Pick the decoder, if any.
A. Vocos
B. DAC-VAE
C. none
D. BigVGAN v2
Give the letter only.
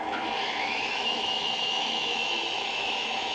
B